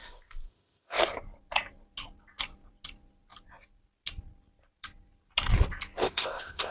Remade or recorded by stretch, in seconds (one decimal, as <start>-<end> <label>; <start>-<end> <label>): 0.0-1.0 remade; 1.0-6.0 recorded; 6.0-6.7 remade